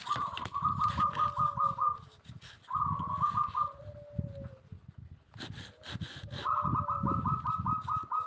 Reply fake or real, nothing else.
real